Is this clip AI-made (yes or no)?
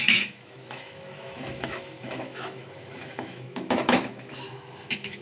yes